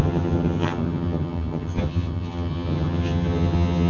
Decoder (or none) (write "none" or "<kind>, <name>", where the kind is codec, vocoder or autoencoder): vocoder, HiFi-GAN